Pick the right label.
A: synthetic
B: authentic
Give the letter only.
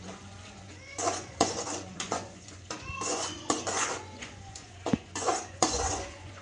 A